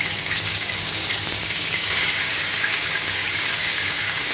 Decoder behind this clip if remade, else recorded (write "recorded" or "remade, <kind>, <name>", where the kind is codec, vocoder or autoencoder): remade, codec, DAC